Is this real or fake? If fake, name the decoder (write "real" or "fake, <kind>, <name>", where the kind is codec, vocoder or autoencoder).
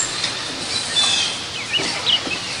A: real